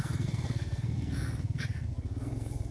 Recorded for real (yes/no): no